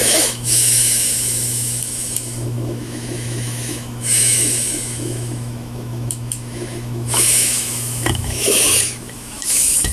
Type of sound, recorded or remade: remade